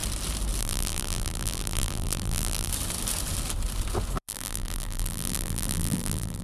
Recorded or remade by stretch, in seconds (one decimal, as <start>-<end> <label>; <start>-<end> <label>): 0.0-0.6 recorded; 0.6-2.7 remade; 2.7-4.2 recorded; 4.2-6.4 remade